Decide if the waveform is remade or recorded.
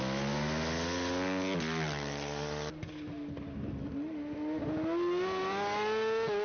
recorded